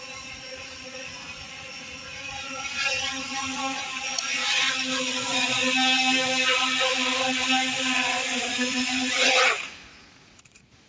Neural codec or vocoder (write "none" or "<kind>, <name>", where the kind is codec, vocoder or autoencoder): vocoder, Vocos